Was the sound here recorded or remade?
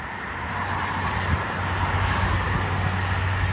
recorded